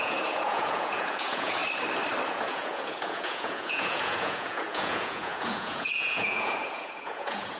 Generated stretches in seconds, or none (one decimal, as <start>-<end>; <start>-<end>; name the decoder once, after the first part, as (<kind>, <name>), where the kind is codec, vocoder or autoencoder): 0.0-1.6 (vocoder, Vocos); 2.3-7.6